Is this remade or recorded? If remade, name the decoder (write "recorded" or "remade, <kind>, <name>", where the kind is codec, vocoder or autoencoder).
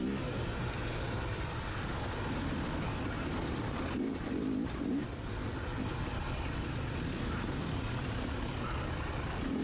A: recorded